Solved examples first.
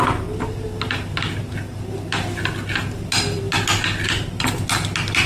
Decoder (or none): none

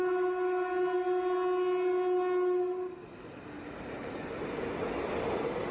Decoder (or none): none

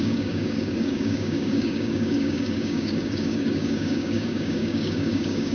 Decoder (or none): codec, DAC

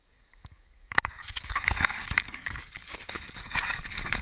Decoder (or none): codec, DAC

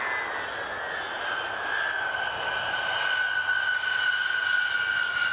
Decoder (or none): none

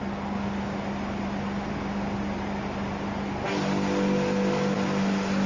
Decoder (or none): none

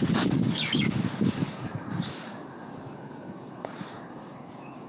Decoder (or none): codec, DAC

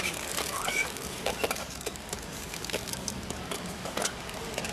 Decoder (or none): codec, DAC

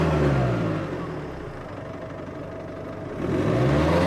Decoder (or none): none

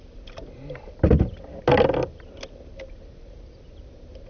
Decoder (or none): none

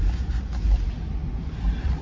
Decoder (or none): none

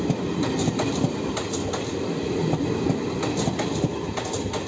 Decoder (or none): none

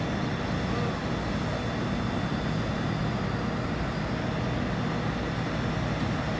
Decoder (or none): none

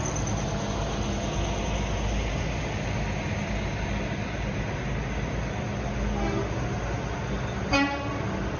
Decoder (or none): none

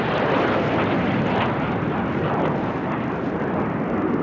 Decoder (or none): none